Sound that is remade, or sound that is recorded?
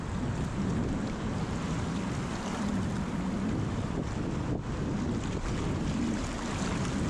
recorded